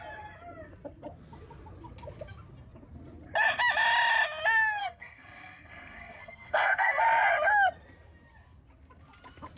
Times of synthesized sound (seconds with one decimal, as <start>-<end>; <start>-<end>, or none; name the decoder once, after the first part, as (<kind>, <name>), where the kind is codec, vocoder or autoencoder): 4.8-7.0 (codec, SNAC)